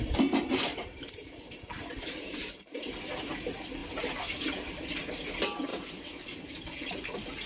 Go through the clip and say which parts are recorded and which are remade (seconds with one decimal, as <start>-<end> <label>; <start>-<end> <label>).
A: 0.0-0.7 recorded; 0.7-2.9 remade; 2.9-5.7 recorded; 5.7-7.5 remade